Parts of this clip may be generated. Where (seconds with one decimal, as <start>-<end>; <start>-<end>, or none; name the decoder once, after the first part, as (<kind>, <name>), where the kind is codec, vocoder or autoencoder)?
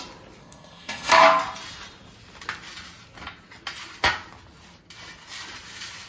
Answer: 0.4-1.2 (codec, SNAC)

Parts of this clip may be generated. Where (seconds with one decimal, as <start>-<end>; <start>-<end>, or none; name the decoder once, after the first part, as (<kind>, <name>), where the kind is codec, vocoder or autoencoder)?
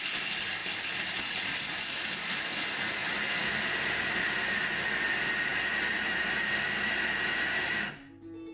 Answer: none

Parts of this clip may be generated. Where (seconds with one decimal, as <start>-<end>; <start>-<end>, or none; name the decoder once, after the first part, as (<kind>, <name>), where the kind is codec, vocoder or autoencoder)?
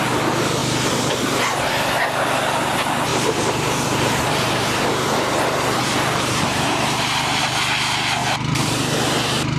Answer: 0.6-1.7 (vocoder, BigVGAN v2); 3.1-7.4; 8.6-9.6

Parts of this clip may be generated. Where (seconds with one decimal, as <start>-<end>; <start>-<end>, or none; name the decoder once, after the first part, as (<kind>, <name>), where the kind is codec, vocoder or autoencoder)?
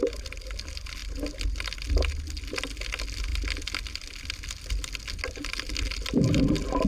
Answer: none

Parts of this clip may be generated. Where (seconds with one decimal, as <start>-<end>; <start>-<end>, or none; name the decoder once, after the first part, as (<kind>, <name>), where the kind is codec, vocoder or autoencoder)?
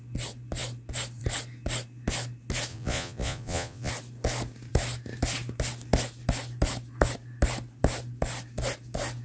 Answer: 2.7-3.9 (vocoder, Vocos)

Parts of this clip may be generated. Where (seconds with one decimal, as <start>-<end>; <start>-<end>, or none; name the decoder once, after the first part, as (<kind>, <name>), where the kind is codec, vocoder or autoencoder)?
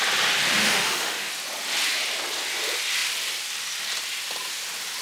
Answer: 0.6-1.3 (autoencoder, DAC-VAE)